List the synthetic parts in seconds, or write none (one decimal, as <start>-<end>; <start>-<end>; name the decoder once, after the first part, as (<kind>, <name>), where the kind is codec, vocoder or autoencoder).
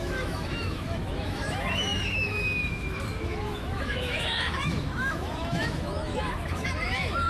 0.0-7.3 (autoencoder, DAC-VAE)